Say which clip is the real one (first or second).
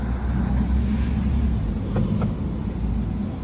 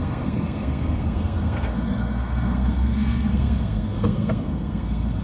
first